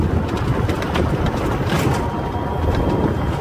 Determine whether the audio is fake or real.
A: real